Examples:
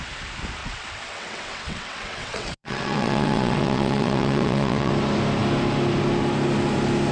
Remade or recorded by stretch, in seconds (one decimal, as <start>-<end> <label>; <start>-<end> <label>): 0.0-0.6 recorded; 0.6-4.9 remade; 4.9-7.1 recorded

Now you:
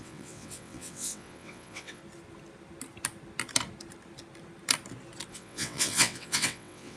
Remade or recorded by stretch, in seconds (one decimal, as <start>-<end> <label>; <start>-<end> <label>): 0.0-2.0 remade; 2.0-5.3 recorded; 5.3-7.0 remade

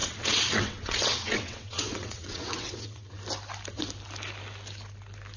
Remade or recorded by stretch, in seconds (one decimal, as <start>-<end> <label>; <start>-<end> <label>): 0.0-3.2 remade; 3.2-5.4 recorded

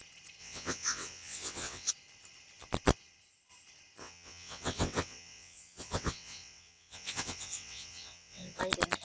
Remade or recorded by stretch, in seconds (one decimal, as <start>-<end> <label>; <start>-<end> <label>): 0.0-0.4 recorded; 0.4-1.9 remade; 1.9-4.0 recorded; 4.0-8.6 remade; 8.6-9.0 recorded